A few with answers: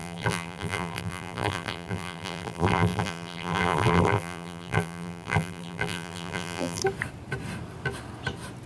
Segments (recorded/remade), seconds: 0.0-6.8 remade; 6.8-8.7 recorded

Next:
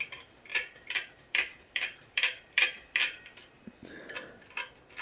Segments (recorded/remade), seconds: 0.0-0.5 recorded; 0.5-3.5 remade; 3.5-5.0 recorded

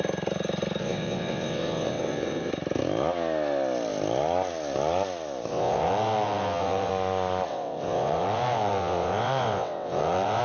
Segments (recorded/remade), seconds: 0.0-0.8 recorded; 0.8-2.5 remade; 2.5-5.5 recorded; 5.5-6.9 remade; 6.9-7.5 recorded; 7.5-10.4 remade

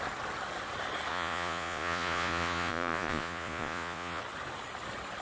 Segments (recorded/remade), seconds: 0.0-1.1 recorded; 1.1-4.2 remade; 4.2-5.2 recorded